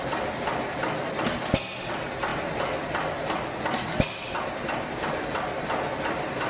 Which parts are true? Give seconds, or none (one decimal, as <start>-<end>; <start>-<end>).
0.0-6.5